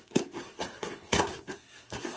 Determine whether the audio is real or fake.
fake